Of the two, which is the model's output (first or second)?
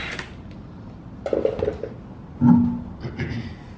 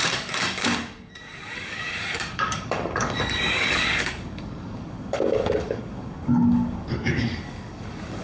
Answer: second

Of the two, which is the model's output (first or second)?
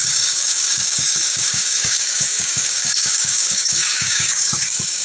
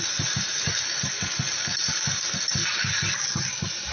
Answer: first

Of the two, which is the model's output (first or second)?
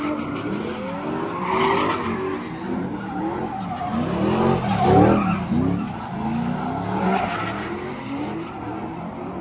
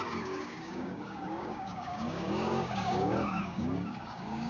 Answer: second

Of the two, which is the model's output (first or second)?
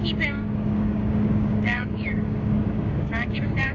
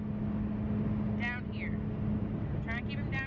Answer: first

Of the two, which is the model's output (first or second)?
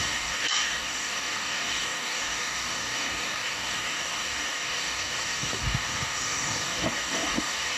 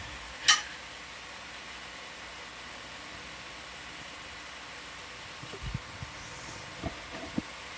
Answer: first